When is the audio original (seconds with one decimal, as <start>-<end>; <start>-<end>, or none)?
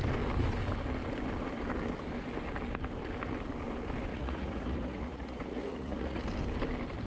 0.0-4.1; 6.2-7.1